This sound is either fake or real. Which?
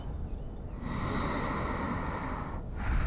real